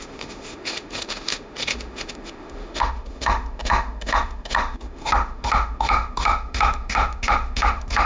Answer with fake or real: fake